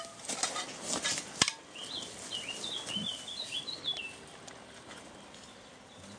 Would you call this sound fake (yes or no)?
no